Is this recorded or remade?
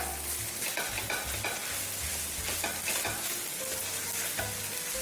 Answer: recorded